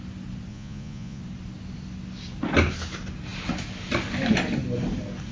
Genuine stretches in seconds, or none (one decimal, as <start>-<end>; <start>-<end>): 0.0-0.5; 1.2-5.3